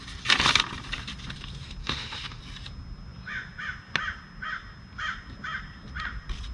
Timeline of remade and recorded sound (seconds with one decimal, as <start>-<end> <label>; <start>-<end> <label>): 0.0-1.8 recorded; 1.8-2.4 remade; 2.4-6.5 recorded